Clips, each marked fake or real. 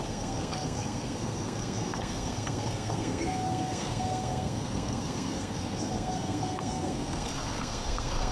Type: fake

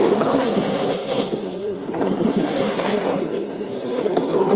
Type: fake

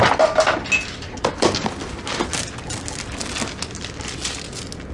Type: real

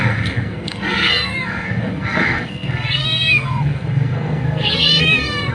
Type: fake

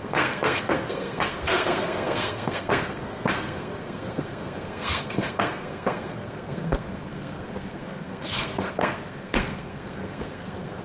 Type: fake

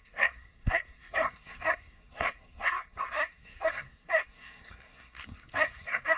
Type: fake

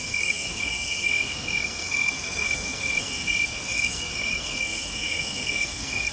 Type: fake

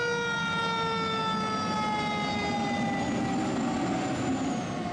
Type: real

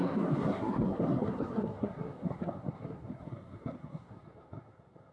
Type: fake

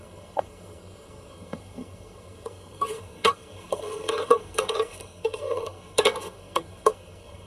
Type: fake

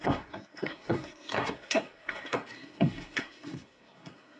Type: fake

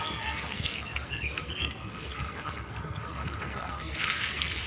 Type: fake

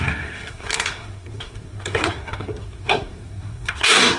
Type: fake